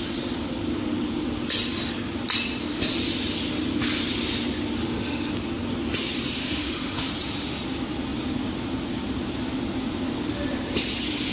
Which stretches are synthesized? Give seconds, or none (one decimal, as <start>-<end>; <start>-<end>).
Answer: 4.8-5.3; 6.4-7.1